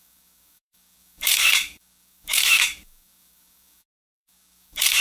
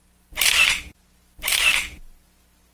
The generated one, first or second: first